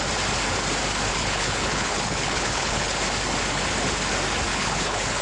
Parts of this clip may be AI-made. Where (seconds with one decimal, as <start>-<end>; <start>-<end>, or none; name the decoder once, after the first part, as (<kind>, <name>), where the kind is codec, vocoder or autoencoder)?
1.1-3.0 (codec, HILCodec); 4.5-5.2